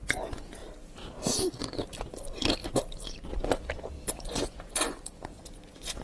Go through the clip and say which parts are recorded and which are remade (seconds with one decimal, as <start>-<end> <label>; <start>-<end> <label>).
0.0-0.6 remade; 0.6-4.1 recorded; 4.1-6.0 remade